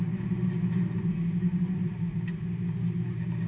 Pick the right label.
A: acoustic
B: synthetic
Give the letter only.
A